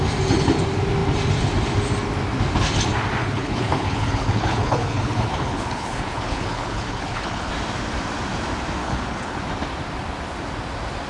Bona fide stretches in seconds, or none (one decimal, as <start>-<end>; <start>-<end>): 0.0-3.2; 7.5-8.8; 9.4-11.1